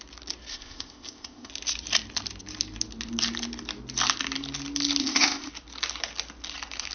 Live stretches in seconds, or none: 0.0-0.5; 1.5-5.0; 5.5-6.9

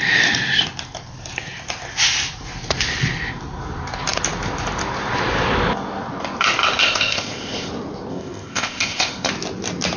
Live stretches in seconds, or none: 0.0-6.8; 7.7-8.1; 9.3-10.0

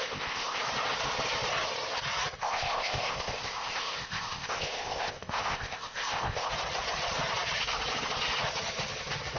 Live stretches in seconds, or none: 0.6-2.4; 6.5-9.4

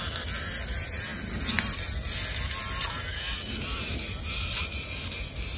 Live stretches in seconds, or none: 0.0-5.6

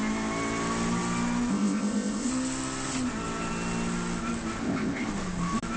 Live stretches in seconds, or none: 0.0-1.5; 2.3-4.6; 5.1-5.8